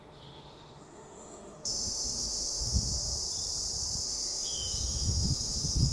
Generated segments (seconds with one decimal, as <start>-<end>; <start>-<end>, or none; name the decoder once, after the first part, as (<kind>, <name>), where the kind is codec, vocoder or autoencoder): 0.0-2.9 (autoencoder, DAC-VAE); 4.0-5.9